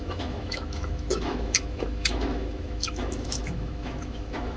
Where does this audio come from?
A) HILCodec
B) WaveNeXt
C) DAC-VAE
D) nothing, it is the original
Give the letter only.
C